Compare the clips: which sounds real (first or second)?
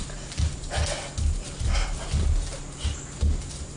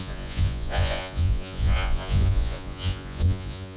first